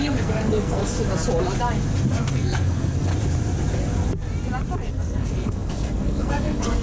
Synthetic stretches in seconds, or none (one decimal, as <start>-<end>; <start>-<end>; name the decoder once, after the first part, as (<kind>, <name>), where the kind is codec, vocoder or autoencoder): 0.0-0.8 (codec, SNAC); 2.3-3.1; 4.9-6.8